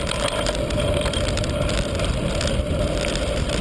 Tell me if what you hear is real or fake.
real